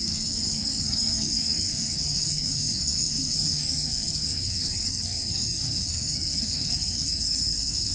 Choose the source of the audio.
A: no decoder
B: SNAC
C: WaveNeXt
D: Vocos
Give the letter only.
B